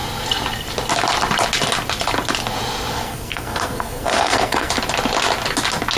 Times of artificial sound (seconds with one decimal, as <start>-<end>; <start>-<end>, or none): 2.9-4.7